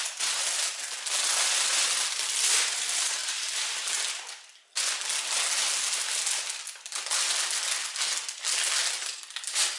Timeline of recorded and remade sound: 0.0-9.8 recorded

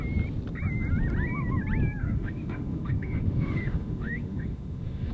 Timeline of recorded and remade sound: 0.0-2.0 recorded; 2.0-5.1 remade

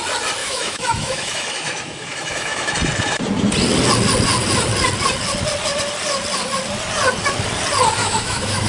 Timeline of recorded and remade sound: 0.0-0.4 recorded; 0.4-2.7 remade; 2.7-8.0 recorded; 8.0-8.7 remade

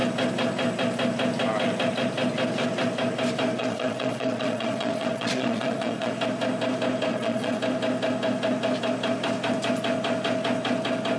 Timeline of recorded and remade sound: 0.0-3.6 recorded; 3.6-6.1 remade; 6.1-7.1 recorded; 7.1-7.6 remade; 7.6-11.2 recorded

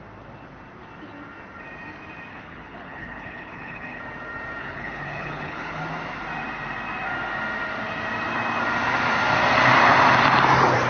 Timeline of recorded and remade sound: 0.0-2.3 recorded; 2.3-4.0 remade; 4.0-4.6 recorded; 4.6-5.8 remade; 5.8-10.9 recorded

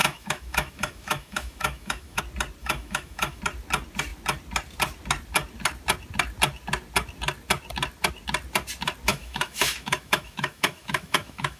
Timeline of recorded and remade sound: 0.0-2.2 remade; 2.2-2.6 recorded; 2.6-3.4 remade; 3.4-9.1 recorded; 9.1-11.6 remade

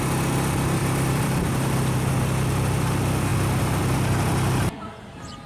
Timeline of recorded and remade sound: 0.0-0.8 recorded; 0.8-2.0 remade; 2.0-5.5 recorded

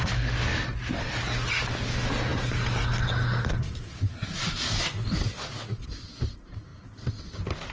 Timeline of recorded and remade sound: 0.0-7.7 recorded